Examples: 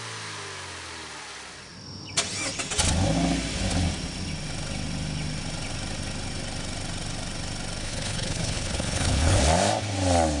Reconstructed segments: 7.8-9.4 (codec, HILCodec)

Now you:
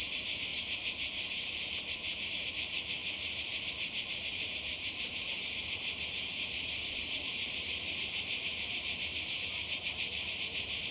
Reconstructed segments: 0.0-0.5 (vocoder, BigVGAN v2); 2.3-10.9

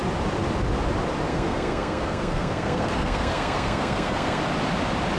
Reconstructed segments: 1.3-4.4 (codec, SNAC)